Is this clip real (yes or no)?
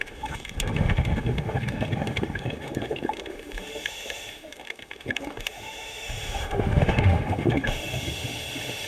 no